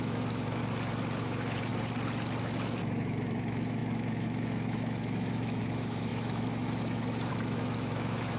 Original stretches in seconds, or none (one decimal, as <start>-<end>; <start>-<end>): 0.6-1.2; 1.7-2.4